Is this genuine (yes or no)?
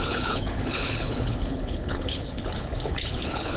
no